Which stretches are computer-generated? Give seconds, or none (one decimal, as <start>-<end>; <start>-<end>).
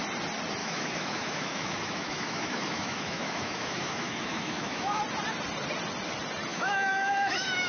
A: 0.6-5.0; 6.5-7.7